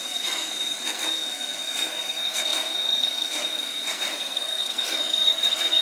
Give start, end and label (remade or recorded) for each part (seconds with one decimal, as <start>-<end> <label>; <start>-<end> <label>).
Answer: 0.0-5.8 remade